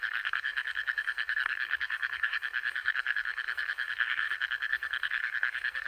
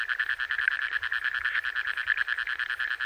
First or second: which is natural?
second